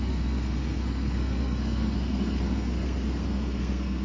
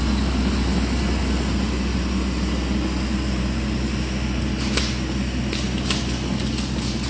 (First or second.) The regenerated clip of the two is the first